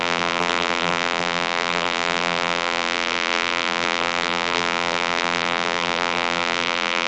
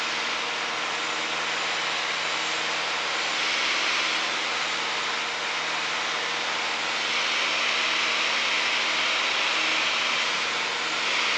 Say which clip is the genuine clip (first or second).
second